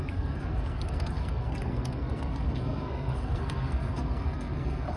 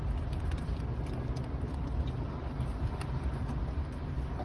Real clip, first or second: second